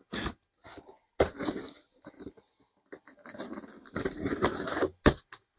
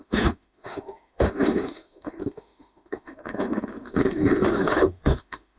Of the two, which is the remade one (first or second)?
second